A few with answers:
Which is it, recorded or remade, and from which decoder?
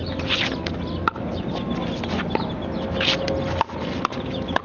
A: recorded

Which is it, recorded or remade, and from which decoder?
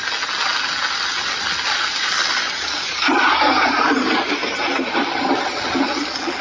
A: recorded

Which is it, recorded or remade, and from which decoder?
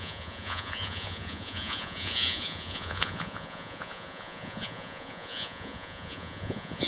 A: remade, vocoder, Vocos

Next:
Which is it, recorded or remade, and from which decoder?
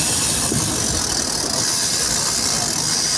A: recorded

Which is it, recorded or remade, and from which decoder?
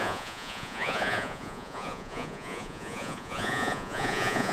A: remade, vocoder, Vocos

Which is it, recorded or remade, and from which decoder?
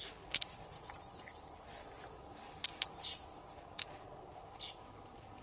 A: recorded